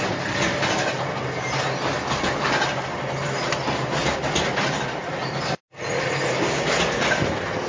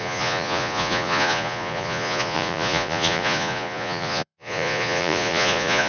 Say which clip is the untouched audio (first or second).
first